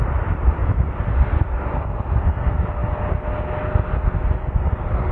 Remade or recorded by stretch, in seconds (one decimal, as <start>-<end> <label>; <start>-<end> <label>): 0.0-5.1 recorded